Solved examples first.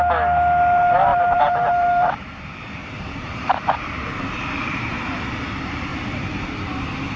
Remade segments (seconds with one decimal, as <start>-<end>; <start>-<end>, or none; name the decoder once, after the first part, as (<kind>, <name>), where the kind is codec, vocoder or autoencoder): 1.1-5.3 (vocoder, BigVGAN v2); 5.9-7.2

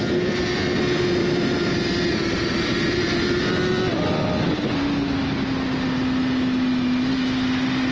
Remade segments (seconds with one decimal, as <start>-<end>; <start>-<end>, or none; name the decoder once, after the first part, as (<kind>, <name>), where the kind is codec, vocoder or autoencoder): 1.2-3.4 (vocoder, BigVGAN v2)

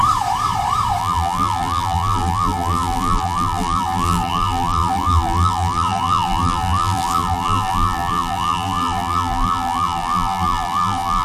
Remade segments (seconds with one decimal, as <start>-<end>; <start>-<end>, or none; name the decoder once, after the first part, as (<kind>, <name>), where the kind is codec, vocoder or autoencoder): 1.0-11.2 (vocoder, BigVGAN v2)